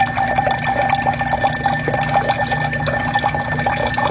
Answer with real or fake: real